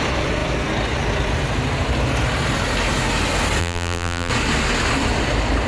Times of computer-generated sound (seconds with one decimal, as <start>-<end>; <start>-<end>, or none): 3.6-4.3